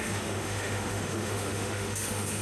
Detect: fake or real fake